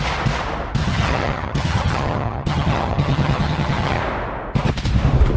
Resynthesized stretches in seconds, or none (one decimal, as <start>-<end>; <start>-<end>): 0.8-4.0